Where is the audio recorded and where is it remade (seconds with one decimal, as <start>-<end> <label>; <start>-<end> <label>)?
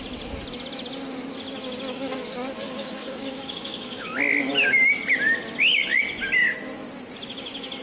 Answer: 0.0-2.6 recorded; 2.6-4.1 remade; 4.1-7.8 recorded